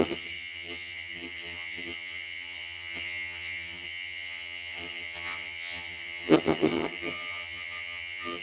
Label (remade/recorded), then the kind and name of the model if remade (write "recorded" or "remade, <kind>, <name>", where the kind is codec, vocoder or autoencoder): remade, vocoder, HiFi-GAN